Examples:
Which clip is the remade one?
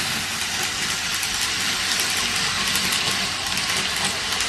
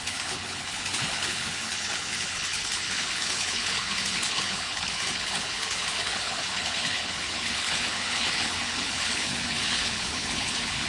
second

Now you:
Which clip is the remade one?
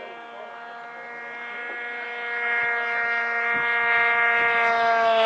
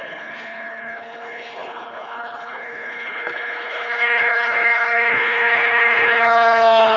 second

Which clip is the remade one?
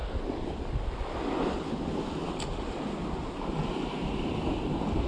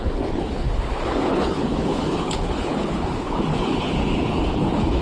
second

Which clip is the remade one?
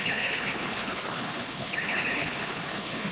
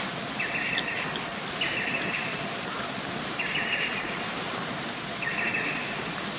first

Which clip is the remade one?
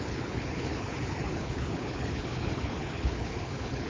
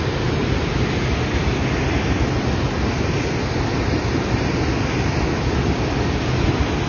first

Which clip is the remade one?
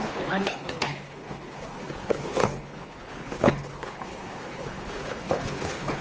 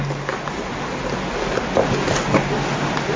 first